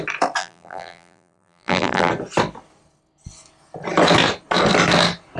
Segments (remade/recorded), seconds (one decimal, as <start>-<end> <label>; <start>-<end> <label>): 0.0-0.4 recorded; 0.4-2.1 remade; 2.1-5.4 recorded